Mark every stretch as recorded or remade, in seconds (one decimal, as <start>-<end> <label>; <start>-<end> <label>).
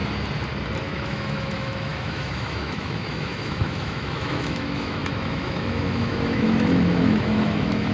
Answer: 0.0-0.8 recorded; 0.8-7.9 remade